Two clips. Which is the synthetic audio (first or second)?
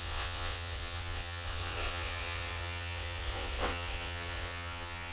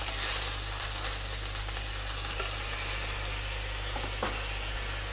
first